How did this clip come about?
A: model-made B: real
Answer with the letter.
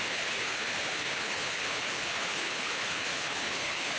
A